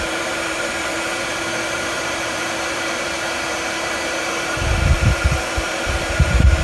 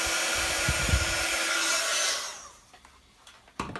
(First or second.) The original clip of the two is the second